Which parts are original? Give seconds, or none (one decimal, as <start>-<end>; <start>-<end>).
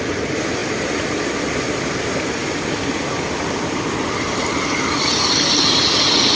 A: 0.0-6.3